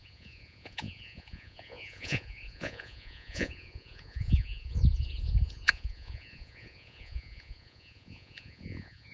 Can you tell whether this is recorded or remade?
remade